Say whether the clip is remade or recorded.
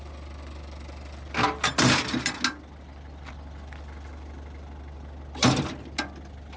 recorded